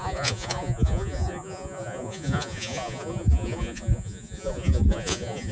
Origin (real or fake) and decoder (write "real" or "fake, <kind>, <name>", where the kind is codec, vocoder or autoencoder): fake, vocoder, Vocos